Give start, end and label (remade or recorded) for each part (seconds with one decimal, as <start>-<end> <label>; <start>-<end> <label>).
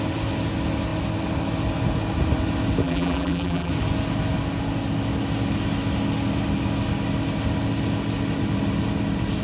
0.0-2.8 recorded; 2.8-3.7 remade; 3.7-9.4 recorded